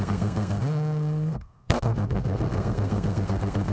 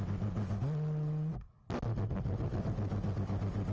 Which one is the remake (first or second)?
first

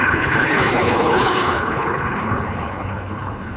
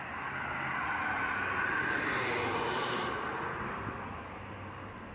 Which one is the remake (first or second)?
first